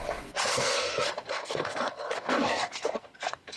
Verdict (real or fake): fake